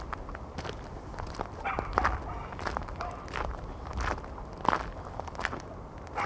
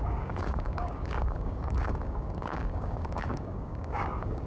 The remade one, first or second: second